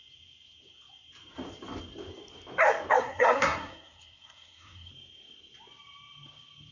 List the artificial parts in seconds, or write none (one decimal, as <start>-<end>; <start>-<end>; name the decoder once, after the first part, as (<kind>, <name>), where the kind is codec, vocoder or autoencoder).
3.0-4.9 (codec, SNAC)